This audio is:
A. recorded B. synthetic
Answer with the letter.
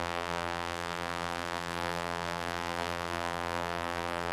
B